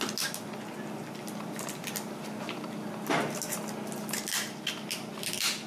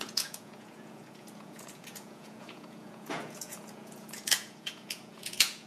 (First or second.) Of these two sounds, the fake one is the second